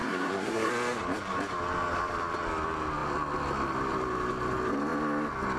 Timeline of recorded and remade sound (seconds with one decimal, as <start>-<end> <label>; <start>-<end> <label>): 0.0-0.7 remade; 0.7-5.6 recorded